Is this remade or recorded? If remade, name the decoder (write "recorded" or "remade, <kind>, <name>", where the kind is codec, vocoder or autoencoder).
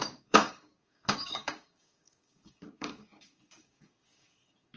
remade, codec, DAC